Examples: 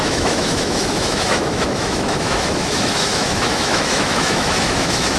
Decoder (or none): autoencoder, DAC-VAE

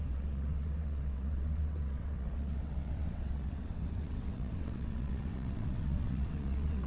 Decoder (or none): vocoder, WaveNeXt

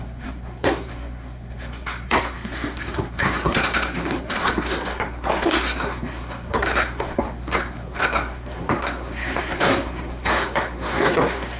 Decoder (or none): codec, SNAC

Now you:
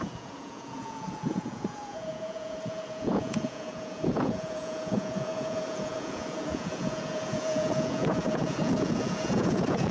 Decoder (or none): vocoder, Vocos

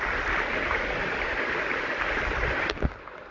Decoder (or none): none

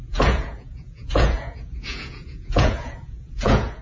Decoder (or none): vocoder, Vocos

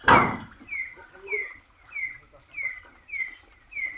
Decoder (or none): none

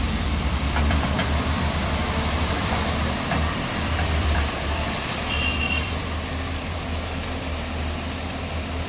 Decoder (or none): vocoder, BigVGAN v2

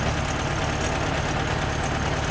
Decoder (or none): none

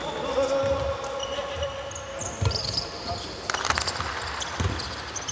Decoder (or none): none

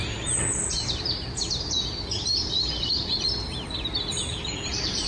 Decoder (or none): vocoder, BigVGAN v2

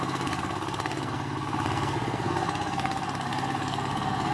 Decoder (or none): codec, SNAC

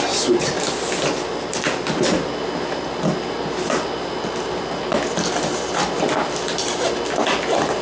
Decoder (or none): none